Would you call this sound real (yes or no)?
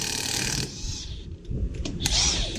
no